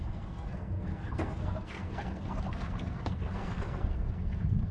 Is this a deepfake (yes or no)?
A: yes